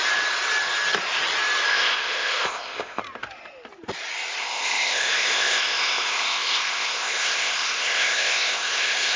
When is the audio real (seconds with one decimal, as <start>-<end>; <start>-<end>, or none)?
0.0-1.7; 3.0-4.4